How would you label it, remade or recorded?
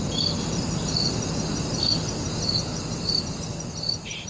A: recorded